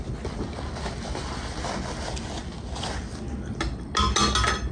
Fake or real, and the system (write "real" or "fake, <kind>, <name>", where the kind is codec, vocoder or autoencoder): real